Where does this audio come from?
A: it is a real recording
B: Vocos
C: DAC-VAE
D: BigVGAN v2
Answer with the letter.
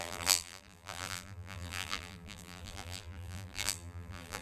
D